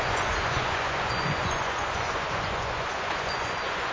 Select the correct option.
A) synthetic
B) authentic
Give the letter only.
A